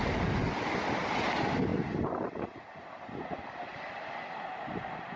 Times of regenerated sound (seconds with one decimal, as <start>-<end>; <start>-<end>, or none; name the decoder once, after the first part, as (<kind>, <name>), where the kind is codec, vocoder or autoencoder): none